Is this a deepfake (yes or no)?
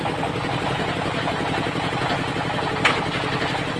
no